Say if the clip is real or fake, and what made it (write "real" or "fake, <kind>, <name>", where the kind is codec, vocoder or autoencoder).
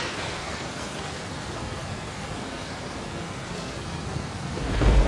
fake, codec, SNAC